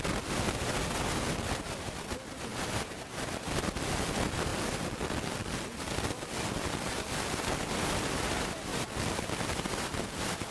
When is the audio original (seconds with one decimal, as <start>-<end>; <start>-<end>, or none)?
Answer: 0.0-10.5